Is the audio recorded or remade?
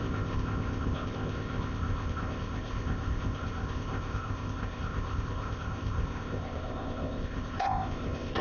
remade